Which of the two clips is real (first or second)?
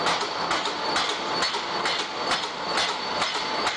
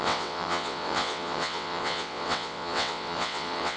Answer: first